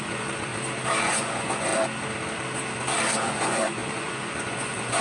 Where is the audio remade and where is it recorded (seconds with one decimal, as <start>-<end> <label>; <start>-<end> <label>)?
0.0-0.5 remade; 0.5-1.0 recorded; 1.0-1.7 remade; 1.7-3.2 recorded; 3.2-5.0 remade